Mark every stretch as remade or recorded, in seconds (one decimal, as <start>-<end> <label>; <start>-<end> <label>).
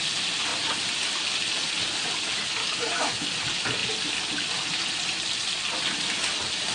0.0-2.6 recorded; 2.6-3.3 remade; 3.3-6.7 recorded